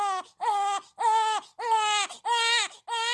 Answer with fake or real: real